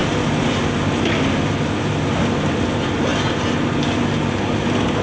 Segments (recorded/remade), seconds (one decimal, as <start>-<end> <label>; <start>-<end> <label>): 0.0-5.0 recorded